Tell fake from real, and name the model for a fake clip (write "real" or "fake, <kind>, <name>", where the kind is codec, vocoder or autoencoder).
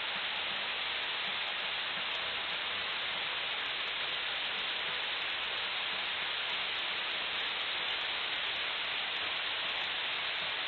real